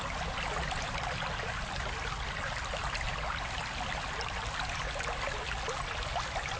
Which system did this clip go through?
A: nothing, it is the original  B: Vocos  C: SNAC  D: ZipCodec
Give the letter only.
A